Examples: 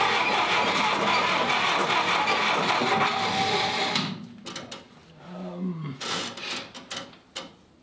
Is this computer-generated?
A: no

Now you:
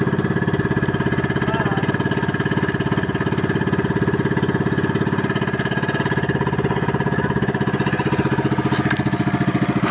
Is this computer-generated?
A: no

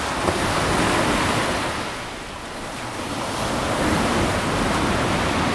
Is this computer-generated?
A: no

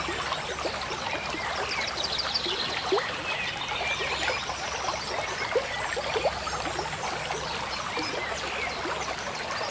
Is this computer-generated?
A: no